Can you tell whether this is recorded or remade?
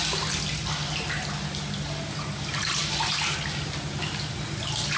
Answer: recorded